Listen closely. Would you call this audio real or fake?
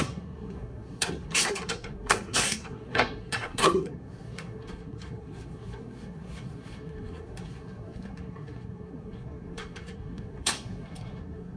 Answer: fake